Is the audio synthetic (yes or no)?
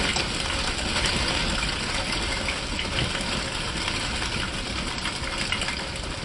no